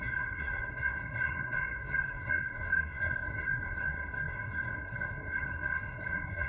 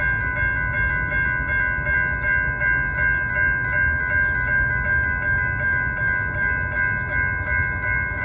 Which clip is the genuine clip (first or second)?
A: second